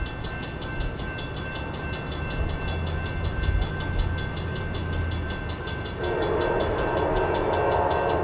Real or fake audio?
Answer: real